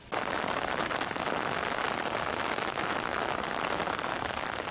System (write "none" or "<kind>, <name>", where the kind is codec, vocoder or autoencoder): none